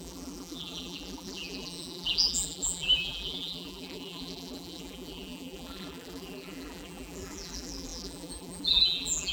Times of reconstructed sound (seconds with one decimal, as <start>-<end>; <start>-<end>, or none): 0.0-9.3